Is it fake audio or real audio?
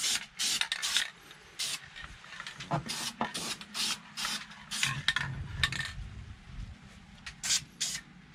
real